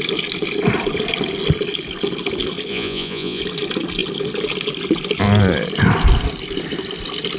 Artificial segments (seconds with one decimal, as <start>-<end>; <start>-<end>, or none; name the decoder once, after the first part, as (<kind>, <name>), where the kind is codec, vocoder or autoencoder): 2.7-3.4 (vocoder, Vocos)